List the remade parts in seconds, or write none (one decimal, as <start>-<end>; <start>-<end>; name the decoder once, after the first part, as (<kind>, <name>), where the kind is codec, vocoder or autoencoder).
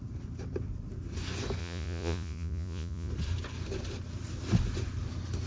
1.6-3.1 (vocoder, Vocos)